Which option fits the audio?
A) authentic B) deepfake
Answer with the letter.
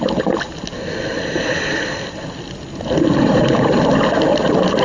A